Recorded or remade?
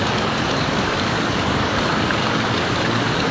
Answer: remade